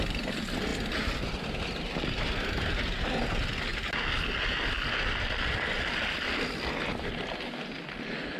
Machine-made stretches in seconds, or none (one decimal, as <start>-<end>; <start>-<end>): none